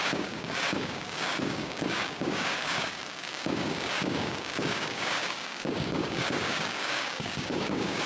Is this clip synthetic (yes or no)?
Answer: yes